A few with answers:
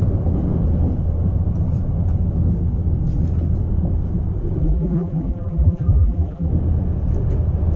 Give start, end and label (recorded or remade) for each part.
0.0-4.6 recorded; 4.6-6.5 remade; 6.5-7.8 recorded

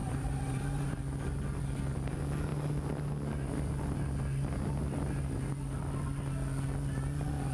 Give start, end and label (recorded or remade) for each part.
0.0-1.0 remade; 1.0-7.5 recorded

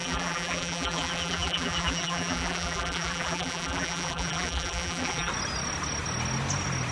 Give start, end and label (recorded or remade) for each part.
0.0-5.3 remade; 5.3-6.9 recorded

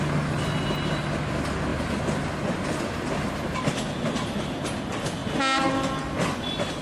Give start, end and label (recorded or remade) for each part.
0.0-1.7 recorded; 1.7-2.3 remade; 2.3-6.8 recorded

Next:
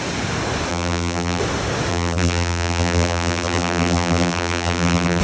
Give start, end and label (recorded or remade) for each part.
0.0-0.7 recorded; 0.7-1.4 remade; 1.4-1.9 recorded; 1.9-5.2 remade

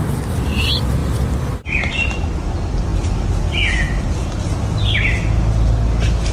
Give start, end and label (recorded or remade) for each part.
0.0-1.0 recorded; 1.0-2.2 remade; 2.2-6.3 recorded